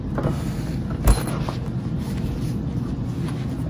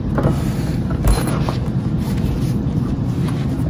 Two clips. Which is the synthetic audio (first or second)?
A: second